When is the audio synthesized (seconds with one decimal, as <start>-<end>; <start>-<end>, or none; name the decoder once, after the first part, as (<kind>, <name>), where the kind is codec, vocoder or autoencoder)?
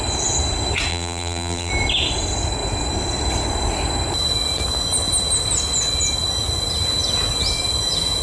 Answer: 0.9-1.7 (vocoder, BigVGAN v2)